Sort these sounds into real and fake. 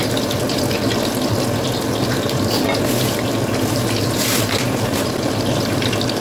real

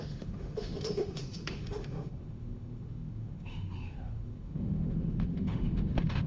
fake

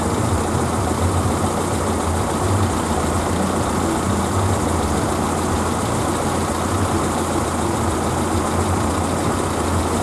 real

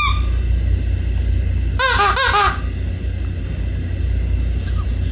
real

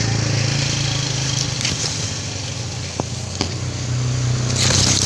real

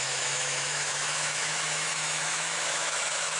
fake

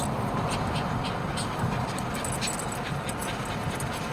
real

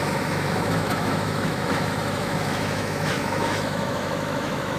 fake